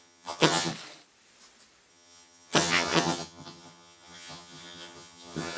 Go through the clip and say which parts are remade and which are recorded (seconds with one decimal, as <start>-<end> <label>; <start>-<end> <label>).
0.0-0.7 remade; 0.7-1.9 recorded; 1.9-5.6 remade